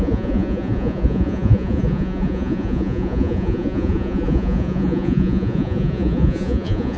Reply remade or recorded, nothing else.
remade